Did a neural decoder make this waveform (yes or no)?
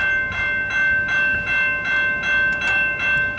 no